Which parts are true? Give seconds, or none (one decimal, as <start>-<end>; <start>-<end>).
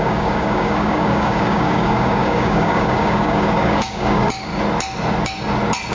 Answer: 4.5-5.9